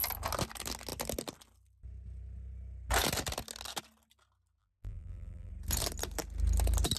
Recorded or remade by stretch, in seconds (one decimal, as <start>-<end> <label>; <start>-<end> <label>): 0.0-4.6 recorded; 4.6-5.5 remade; 5.5-7.0 recorded